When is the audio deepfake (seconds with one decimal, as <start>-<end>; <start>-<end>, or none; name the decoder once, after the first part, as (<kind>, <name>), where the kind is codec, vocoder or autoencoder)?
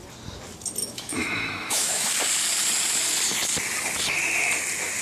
0.8-2.1 (autoencoder, DAC-VAE)